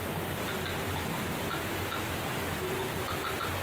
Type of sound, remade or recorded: recorded